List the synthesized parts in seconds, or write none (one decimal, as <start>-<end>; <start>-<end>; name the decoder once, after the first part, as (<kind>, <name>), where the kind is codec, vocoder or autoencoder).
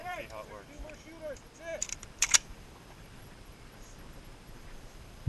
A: 0.0-0.5 (vocoder, BigVGAN v2); 1.8-5.3